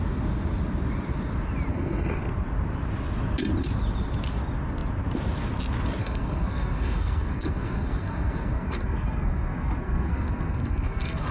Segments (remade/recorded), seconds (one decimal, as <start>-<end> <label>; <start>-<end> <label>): 0.0-1.7 recorded; 1.7-2.2 remade; 2.2-6.0 recorded; 6.0-11.3 remade